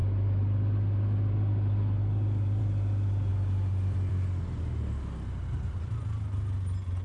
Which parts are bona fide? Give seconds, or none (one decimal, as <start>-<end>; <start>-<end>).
2.6-3.3; 4.1-7.0